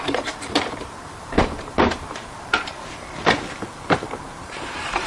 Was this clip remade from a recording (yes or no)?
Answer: yes